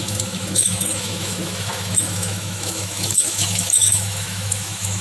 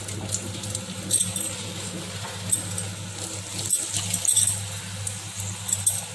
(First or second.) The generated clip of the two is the first